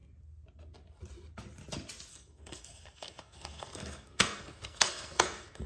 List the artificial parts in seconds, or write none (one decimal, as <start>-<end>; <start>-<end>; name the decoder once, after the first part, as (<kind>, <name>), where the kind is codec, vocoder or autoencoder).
2.1-5.7 (codec, SNAC)